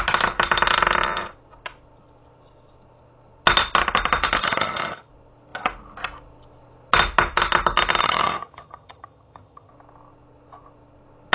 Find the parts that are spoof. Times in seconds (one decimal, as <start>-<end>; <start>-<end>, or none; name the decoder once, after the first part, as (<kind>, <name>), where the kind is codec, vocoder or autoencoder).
4.4-5.1 (vocoder, HiFi-GAN); 8.0-9.7

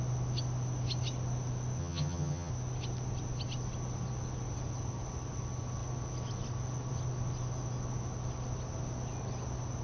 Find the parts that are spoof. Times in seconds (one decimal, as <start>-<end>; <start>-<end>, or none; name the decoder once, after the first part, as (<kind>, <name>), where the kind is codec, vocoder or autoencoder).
1.8-2.5 (vocoder, HiFi-GAN)